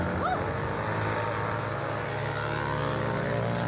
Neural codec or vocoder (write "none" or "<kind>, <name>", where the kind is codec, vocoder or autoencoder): none